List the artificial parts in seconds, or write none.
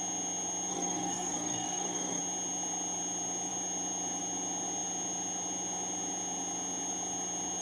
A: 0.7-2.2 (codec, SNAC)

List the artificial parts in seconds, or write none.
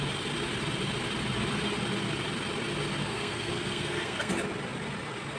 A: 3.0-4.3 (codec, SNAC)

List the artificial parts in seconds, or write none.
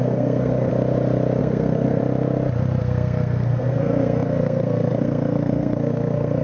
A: 0.0-0.7 (codec, SNAC); 1.4-2.0; 2.8-6.4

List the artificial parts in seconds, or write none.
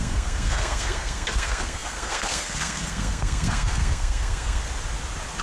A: 0.0-4.6 (codec, SNAC)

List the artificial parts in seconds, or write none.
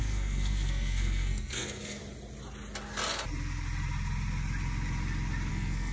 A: 0.0-2.0 (codec, SNAC); 5.5-5.9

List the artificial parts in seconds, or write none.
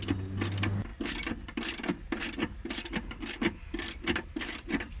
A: none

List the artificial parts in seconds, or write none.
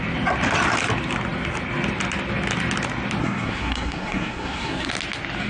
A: 3.2-4.9 (codec, SNAC)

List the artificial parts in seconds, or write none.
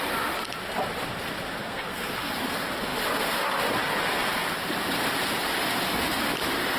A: 1.6-2.3 (codec, SNAC)